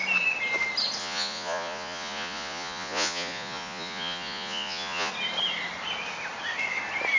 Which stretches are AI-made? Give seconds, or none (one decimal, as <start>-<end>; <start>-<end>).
1.0-5.1